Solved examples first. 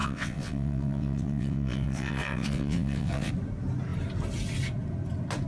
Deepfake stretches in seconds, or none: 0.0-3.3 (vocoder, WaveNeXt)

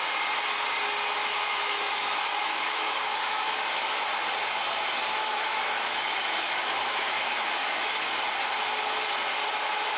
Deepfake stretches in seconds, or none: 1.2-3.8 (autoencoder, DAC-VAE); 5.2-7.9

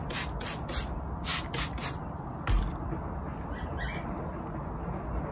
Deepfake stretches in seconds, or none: 1.3-2.6 (vocoder, BigVGAN v2); 3.9-4.7

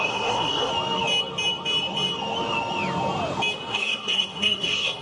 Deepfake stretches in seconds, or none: 0.0-0.7 (codec, SNAC); 3.7-5.0

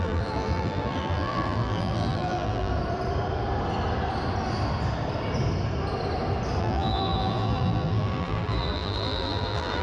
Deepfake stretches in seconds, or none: 0.0-2.7 (vocoder, BigVGAN v2); 6.6-9.8